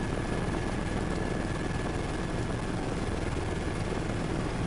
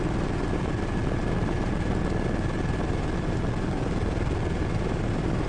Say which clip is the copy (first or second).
second